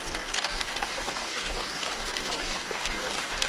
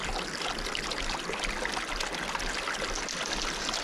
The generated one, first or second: first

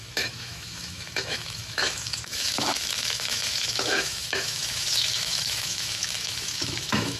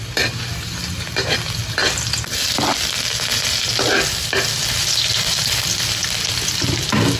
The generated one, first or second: first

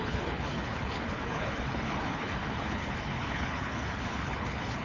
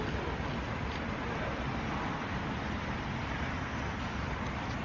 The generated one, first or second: first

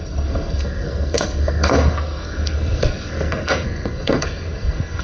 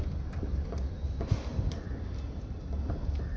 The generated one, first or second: first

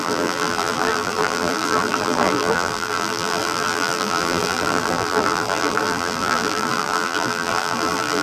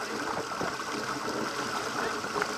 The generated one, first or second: first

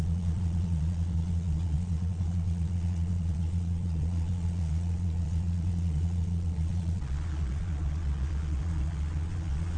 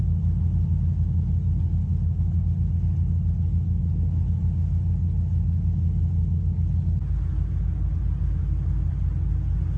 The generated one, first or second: first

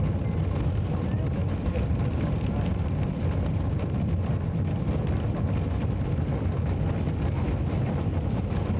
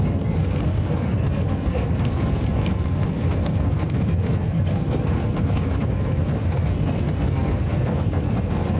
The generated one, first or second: second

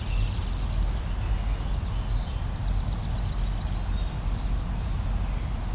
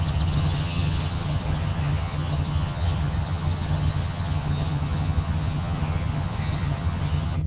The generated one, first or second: second